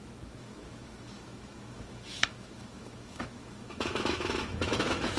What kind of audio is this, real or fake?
fake